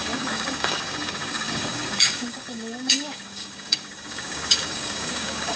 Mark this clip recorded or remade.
remade